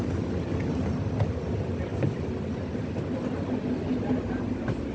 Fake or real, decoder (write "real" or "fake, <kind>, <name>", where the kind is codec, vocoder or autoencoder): real